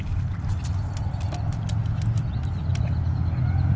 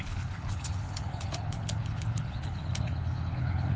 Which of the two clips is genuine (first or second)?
first